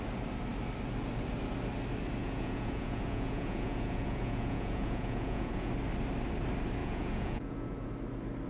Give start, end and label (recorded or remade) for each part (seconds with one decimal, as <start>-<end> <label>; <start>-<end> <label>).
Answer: 0.0-2.2 recorded; 2.2-5.7 remade; 5.7-6.8 recorded; 6.8-7.9 remade; 7.9-8.5 recorded